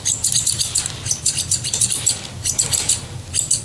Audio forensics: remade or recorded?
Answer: recorded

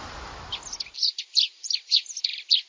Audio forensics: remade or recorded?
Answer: recorded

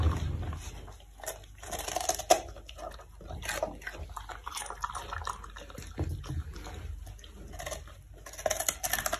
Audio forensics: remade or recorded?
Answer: recorded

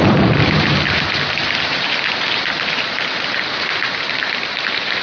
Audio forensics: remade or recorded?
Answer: remade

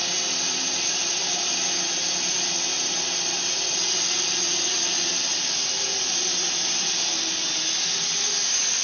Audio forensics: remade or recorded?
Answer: recorded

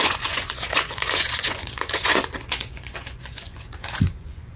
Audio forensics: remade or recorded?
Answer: remade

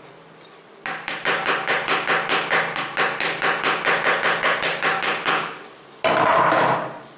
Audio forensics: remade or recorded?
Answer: recorded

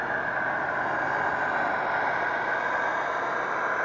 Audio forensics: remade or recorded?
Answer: recorded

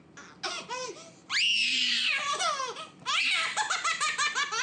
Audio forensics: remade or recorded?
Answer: recorded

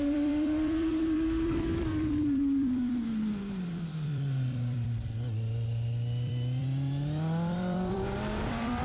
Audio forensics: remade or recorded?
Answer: remade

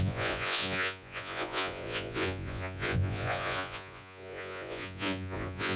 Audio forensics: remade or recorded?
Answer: remade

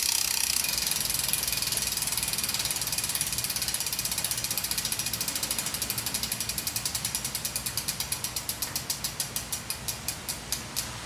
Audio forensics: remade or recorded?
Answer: recorded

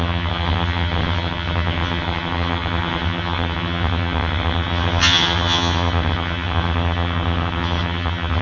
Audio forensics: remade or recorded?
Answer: remade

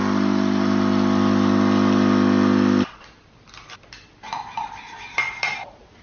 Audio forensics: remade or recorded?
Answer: recorded